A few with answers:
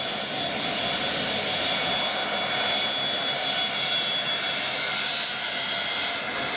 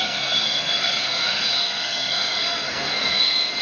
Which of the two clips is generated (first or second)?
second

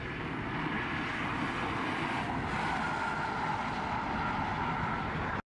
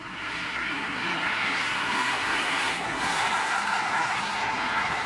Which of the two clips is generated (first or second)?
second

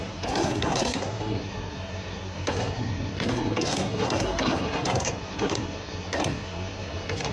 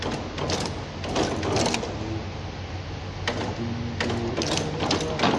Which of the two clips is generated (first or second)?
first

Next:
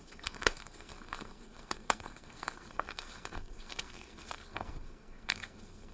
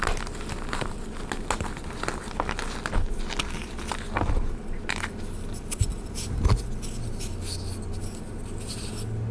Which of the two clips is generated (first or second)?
first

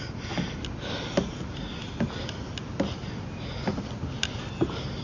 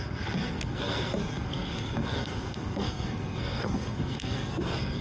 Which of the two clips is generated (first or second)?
second